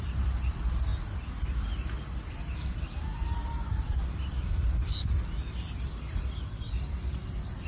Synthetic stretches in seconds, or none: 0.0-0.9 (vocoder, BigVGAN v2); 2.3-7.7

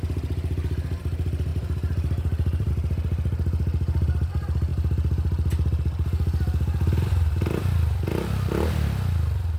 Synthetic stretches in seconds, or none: 1.5-2.7 (vocoder, BigVGAN v2)

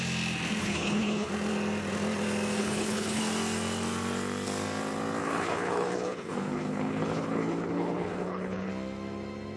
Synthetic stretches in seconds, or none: 0.6-1.3 (codec, HILCodec); 2.6-3.2; 5.2-8.7

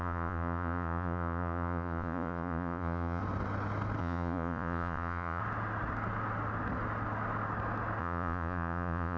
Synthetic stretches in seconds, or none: 0.0-3.2 (vocoder, Vocos); 4.0-5.4; 8.0-9.2